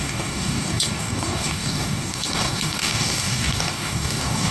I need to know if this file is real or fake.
fake